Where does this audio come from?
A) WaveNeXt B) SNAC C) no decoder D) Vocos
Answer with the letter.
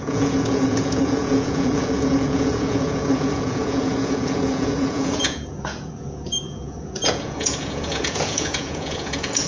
D